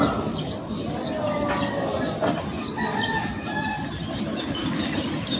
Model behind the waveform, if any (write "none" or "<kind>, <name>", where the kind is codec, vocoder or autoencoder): none